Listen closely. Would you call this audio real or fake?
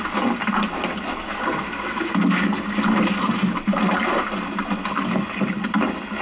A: real